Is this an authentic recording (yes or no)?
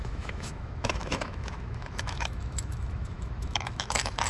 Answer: no